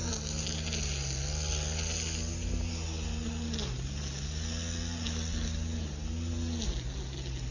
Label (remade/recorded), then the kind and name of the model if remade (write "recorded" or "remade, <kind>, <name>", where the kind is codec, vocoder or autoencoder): recorded